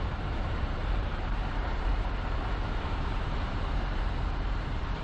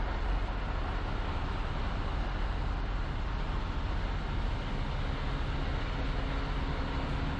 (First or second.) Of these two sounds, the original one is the second